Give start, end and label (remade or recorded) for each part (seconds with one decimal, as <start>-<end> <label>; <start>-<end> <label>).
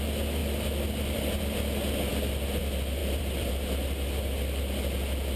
0.0-0.4 recorded; 0.4-1.4 remade; 1.4-3.0 recorded; 3.0-3.5 remade; 3.5-5.4 recorded